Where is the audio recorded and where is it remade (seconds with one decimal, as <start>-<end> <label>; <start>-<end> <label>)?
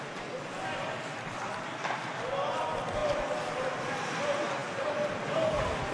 0.0-3.0 recorded; 3.0-3.6 remade; 3.6-4.6 recorded; 4.6-5.5 remade; 5.5-5.9 recorded